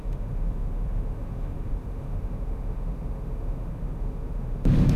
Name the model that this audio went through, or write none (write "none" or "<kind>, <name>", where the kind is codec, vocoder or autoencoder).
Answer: autoencoder, DAC-VAE